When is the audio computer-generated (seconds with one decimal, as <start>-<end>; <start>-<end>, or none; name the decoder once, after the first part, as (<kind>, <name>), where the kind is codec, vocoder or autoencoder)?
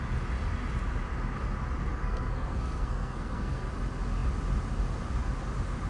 1.9-3.7 (codec, SNAC)